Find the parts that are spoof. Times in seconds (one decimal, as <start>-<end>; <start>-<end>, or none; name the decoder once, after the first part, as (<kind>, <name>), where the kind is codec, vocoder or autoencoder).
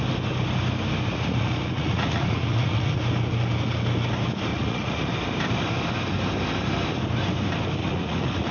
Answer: 1.1-3.0 (vocoder, Vocos); 4.5-5.1; 7.8-8.5